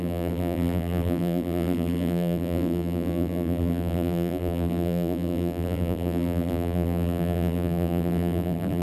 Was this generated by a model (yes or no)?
yes